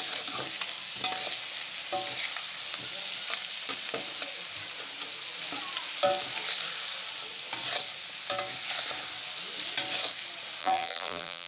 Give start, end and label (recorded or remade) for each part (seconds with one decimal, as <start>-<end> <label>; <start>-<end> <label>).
0.0-10.6 recorded; 10.6-11.5 remade